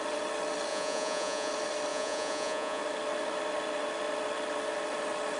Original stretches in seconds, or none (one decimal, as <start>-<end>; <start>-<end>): 0.0-0.7; 1.5-1.9; 2.8-5.4